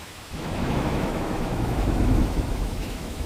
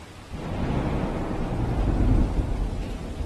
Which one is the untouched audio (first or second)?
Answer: second